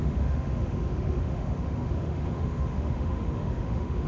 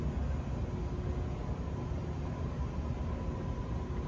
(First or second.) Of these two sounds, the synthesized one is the first